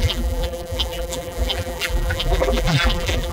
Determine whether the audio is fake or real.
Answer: fake